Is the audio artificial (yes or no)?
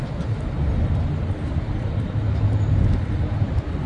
no